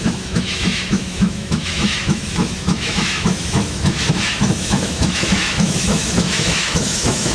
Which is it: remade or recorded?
remade